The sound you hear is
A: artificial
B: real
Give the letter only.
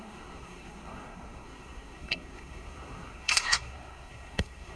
A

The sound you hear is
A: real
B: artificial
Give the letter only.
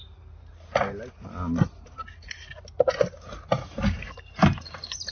A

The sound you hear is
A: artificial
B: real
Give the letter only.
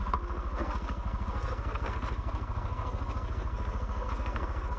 A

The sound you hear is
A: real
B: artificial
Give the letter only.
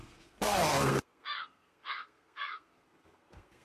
B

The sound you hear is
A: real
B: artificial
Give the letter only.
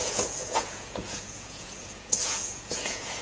B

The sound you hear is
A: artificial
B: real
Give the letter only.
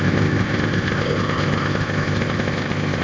A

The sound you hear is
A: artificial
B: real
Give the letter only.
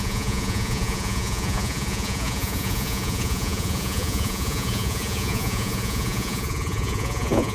A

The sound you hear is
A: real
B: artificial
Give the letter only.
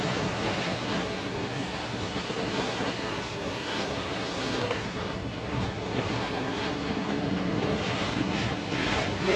B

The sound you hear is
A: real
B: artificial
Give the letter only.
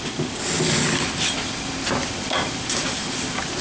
A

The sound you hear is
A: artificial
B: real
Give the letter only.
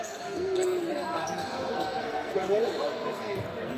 A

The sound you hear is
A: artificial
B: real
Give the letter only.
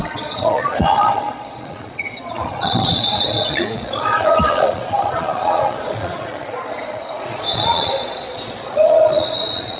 A